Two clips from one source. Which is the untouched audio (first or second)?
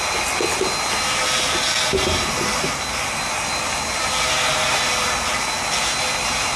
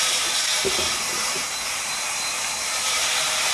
first